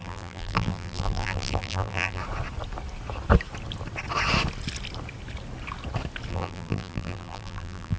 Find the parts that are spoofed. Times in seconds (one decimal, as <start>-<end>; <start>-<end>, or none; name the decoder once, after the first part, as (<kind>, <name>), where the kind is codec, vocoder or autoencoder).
0.0-2.2 (vocoder, BigVGAN v2); 6.3-8.0